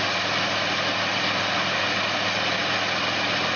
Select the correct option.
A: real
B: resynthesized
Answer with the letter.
A